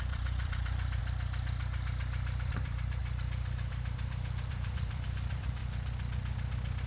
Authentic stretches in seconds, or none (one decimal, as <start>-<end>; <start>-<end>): 1.0-2.5; 3.0-4.5; 5.6-6.9

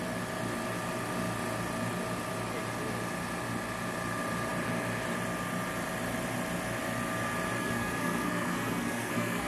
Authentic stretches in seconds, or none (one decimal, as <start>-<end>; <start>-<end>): 0.0-7.6